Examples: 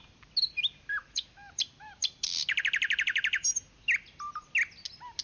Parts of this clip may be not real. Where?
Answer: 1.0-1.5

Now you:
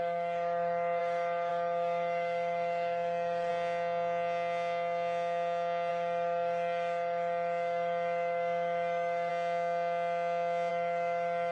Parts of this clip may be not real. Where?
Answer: 0.0-3.5; 5.9-9.3; 10.7-11.5

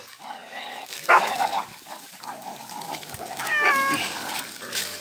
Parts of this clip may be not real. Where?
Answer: 0.0-5.0

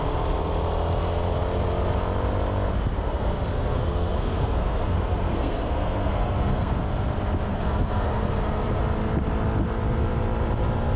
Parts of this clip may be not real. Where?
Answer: 2.9-6.8; 7.5-8.8

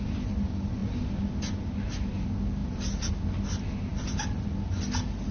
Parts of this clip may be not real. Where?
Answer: none

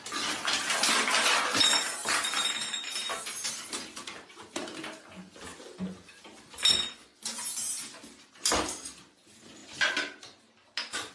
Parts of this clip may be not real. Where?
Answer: none

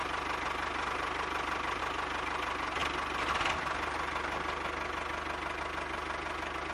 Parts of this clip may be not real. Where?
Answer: none